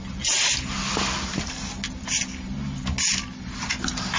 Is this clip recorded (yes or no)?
yes